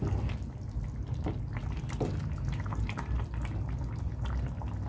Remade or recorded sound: recorded